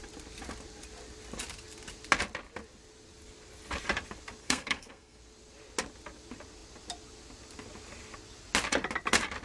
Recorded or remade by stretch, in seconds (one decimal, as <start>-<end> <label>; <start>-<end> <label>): 0.0-4.4 recorded; 4.4-5.2 remade; 5.2-9.4 recorded